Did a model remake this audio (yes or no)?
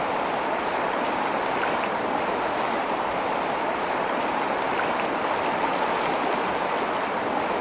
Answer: no